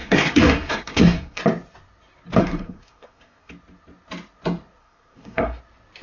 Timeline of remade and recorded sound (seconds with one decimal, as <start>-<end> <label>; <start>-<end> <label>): 0.0-1.4 remade; 1.4-2.4 recorded; 2.4-3.5 remade; 3.5-4.8 recorded; 4.8-5.6 remade; 5.6-6.0 recorded